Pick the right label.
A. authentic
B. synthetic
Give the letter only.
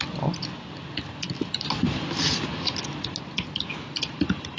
A